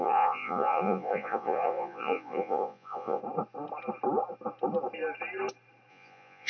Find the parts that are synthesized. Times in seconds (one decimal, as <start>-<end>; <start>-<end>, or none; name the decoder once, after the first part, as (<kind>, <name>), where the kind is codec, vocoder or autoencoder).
0.0-3.2 (vocoder, Vocos); 5.9-6.5